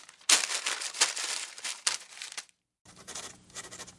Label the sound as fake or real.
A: real